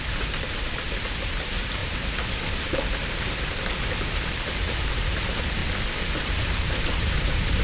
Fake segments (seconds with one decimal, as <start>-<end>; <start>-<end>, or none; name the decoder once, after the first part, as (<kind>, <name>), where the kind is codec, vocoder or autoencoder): 0.0-1.8 (vocoder, BigVGAN v2); 2.5-5.6; 6.2-7.6